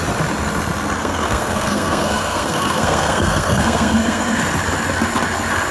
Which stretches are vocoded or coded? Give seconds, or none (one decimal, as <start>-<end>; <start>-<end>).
1.0-4.4